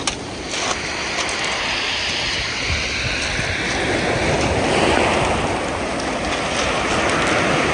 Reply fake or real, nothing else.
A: real